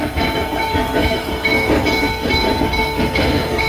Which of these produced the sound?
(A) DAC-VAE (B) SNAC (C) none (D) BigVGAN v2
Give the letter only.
B